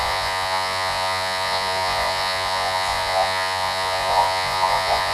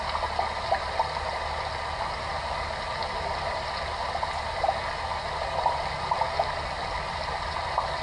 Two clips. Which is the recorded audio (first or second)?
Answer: second